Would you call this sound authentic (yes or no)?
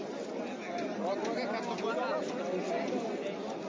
yes